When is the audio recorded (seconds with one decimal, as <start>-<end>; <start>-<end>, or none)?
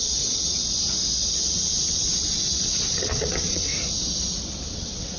0.6-1.3; 3.7-4.7